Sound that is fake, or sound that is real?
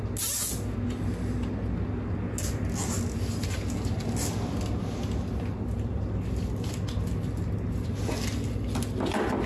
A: real